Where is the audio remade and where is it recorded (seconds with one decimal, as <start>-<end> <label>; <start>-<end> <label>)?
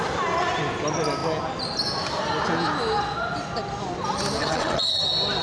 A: 0.0-4.4 recorded; 4.4-5.0 remade; 5.0-5.4 recorded